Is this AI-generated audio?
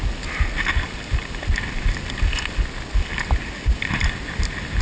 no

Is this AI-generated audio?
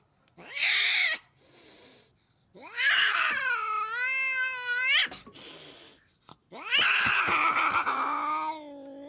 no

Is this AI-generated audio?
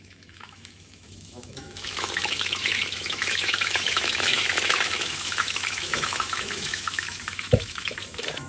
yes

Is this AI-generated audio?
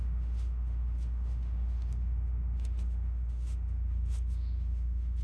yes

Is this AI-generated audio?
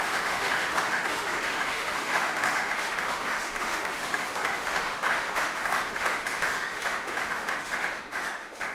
yes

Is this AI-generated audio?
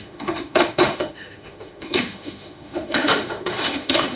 yes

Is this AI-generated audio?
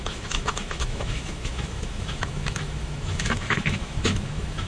yes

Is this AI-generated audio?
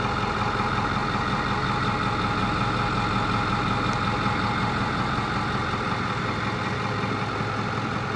no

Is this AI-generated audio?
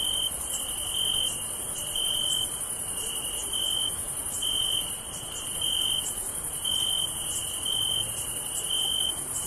no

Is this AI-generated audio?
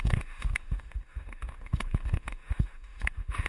yes